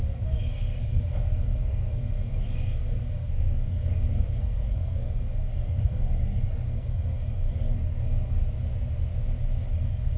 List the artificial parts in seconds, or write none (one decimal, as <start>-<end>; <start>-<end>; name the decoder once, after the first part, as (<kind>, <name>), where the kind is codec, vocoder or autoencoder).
0.0-8.4 (codec, SNAC); 9.7-10.2